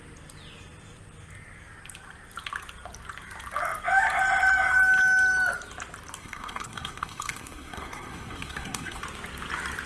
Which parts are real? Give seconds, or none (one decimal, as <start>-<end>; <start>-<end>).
0.0-6.2; 9.0-9.9